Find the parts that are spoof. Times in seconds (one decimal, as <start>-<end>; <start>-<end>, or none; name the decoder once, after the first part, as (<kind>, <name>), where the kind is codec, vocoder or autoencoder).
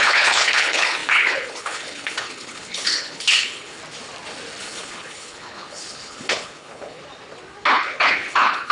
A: 0.0-3.8 (codec, HILCodec); 4.6-7.0; 7.7-8.7